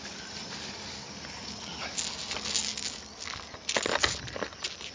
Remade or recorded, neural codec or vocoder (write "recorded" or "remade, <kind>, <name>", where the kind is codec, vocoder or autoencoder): recorded